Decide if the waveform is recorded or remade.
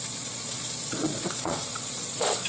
remade